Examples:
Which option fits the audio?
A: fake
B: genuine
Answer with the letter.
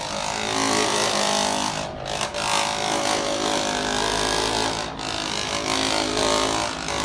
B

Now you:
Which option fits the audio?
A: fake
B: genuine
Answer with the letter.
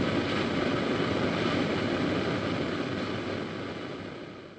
B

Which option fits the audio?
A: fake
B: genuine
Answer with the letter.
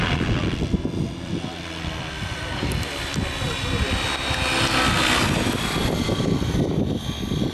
B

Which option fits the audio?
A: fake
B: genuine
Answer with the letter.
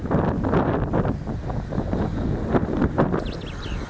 B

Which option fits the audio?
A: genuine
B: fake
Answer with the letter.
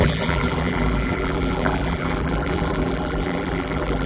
B